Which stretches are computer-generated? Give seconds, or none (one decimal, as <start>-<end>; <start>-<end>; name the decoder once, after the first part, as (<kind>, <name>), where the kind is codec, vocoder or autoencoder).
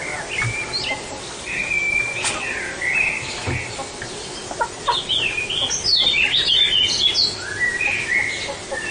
none